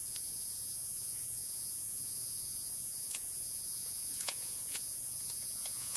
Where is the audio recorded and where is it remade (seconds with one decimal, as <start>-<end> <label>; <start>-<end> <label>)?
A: 0.0-6.0 remade